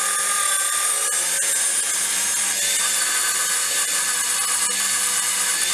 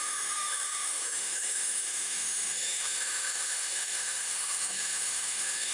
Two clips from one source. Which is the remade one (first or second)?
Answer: second